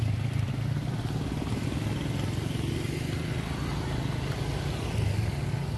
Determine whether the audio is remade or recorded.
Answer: recorded